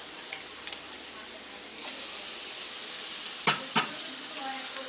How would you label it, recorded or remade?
recorded